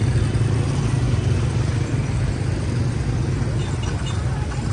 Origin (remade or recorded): recorded